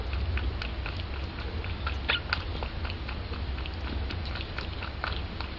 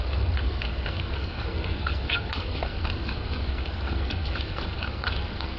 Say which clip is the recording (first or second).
first